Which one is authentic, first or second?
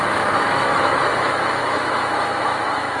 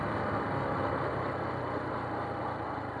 second